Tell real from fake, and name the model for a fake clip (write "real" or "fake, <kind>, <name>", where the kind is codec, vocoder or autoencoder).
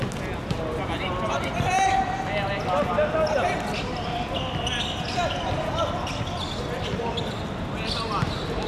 real